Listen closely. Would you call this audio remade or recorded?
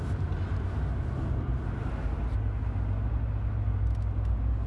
recorded